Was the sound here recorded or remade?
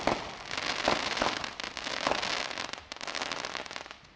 recorded